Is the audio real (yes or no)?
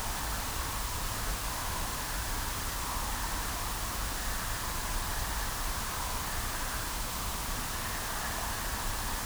no